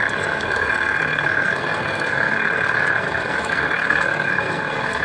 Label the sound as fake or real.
fake